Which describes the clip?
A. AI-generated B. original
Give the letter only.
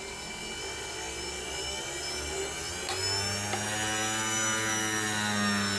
B